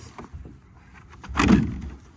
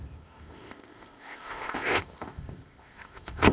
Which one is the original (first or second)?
first